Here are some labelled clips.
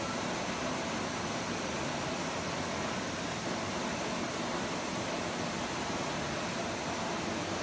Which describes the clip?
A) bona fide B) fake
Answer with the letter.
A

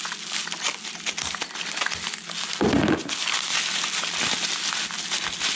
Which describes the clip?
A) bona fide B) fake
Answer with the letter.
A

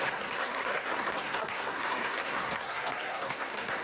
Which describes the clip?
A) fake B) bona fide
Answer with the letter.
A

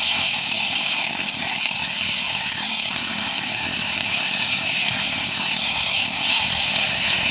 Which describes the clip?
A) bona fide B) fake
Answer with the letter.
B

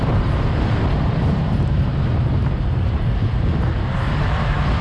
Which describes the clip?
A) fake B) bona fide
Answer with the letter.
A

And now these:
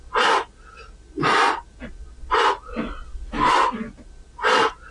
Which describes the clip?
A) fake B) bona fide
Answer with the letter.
B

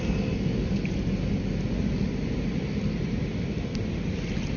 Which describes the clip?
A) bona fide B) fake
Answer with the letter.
A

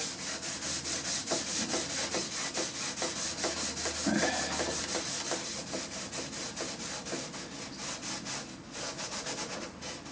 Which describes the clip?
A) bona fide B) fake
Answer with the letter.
A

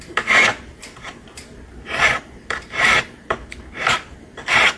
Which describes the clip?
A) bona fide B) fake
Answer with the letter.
B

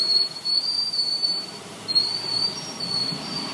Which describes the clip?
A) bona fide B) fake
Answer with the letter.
B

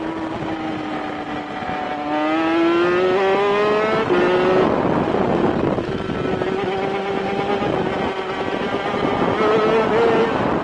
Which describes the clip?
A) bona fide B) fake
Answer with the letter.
A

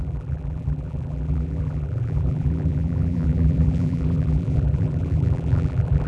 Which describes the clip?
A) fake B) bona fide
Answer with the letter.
A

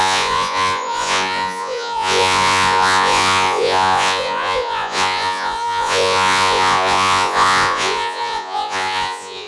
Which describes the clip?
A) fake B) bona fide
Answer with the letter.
A